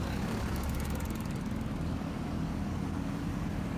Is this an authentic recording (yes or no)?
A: no